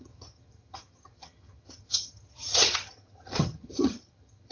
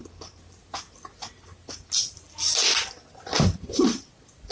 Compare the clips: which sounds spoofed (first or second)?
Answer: first